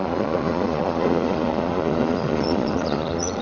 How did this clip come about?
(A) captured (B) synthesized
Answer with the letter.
B